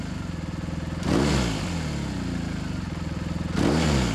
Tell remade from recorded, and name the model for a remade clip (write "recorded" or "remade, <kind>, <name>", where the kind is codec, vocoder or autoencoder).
recorded